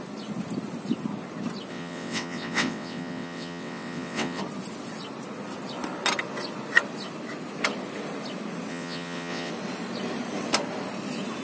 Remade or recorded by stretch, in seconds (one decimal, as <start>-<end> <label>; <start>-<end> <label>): 0.0-1.7 recorded; 1.7-4.4 remade; 4.4-8.7 recorded; 8.7-9.5 remade; 9.5-11.4 recorded